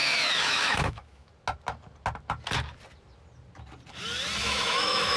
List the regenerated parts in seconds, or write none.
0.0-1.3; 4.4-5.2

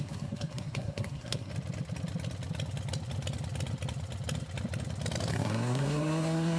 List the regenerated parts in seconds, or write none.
0.0-1.5; 5.3-6.6

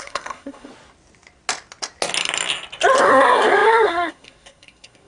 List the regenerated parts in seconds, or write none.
0.0-0.7; 3.0-5.1